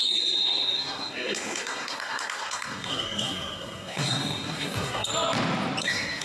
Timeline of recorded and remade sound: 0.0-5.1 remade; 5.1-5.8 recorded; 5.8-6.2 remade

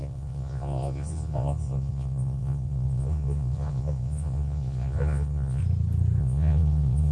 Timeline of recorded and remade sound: 0.0-5.6 remade; 5.6-6.2 recorded; 6.2-7.1 remade

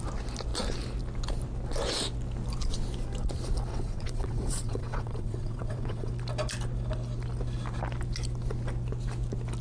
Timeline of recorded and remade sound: 0.0-3.7 recorded; 3.7-6.1 remade; 6.1-9.6 recorded

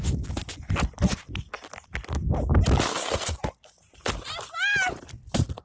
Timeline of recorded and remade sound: 0.0-2.9 recorded; 2.9-3.4 remade; 3.4-5.6 recorded

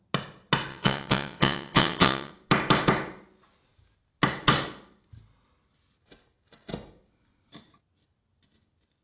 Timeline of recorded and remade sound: 0.0-0.7 recorded; 0.7-2.3 remade; 2.3-9.0 recorded